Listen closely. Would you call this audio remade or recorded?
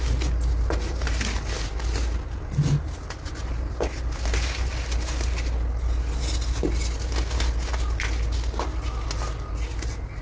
recorded